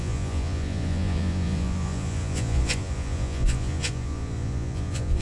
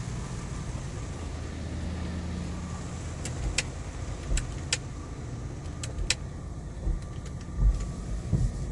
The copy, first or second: first